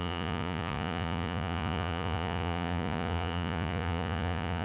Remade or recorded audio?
remade